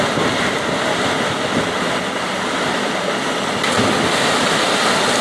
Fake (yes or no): no